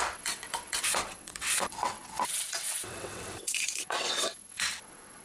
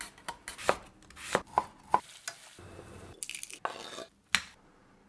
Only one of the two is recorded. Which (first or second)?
second